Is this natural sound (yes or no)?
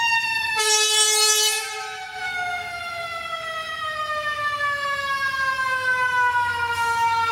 no